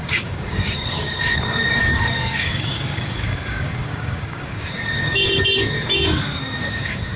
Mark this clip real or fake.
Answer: fake